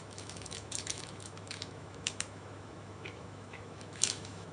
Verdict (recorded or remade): remade